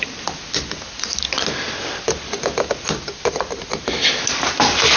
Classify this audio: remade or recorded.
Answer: recorded